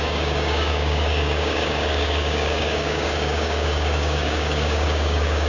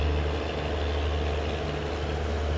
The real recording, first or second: second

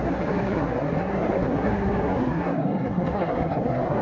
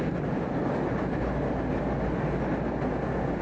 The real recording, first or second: second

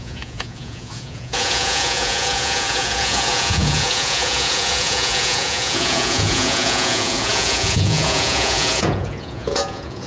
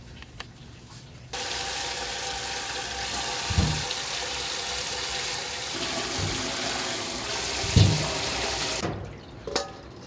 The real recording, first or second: second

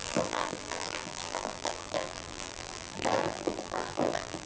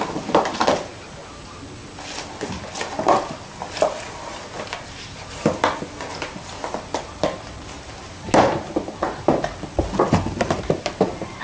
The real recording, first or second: second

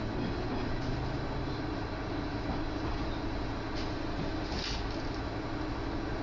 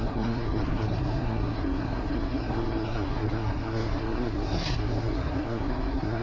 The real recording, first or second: first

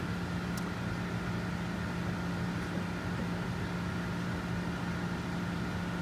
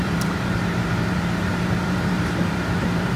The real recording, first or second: first